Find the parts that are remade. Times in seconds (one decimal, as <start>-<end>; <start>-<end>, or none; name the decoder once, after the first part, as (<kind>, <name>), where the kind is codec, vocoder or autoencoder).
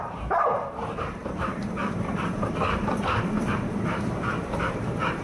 0.0-5.2 (vocoder, BigVGAN v2)